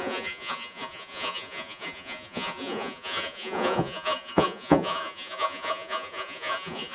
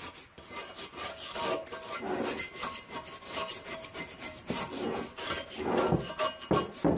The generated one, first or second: first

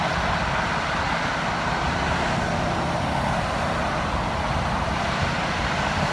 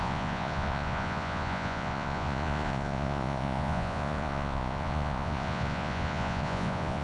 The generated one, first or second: second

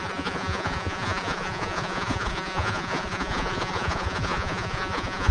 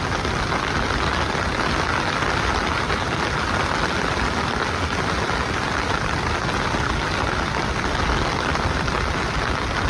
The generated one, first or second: first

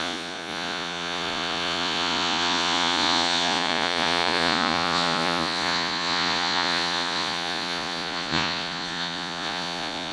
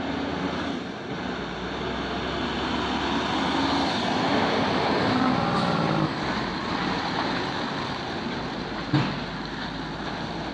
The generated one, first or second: first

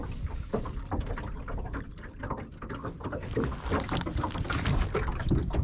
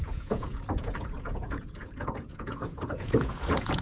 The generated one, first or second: second